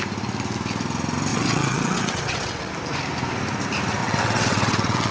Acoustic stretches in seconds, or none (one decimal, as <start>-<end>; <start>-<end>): 0.0-1.3; 2.7-4.0